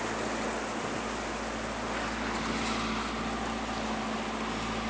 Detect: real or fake real